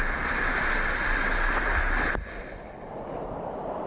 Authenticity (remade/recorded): recorded